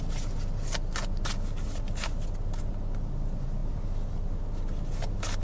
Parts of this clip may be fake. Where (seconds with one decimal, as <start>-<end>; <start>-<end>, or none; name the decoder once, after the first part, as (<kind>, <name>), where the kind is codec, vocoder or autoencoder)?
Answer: none